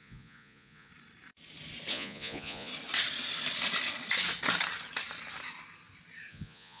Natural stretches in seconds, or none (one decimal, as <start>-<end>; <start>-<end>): 0.9-1.9; 2.7-6.3

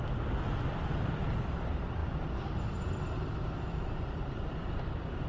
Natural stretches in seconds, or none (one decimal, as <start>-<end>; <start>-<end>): none